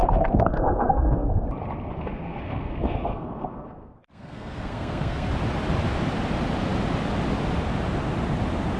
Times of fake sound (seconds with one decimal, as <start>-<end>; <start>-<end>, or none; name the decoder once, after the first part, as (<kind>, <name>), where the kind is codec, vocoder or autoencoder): 0.0-1.3 (codec, SNAC); 1.9-5.3